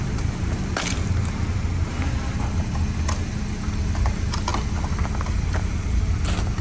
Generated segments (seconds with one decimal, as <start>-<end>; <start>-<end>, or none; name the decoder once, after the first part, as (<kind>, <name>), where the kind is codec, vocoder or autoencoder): none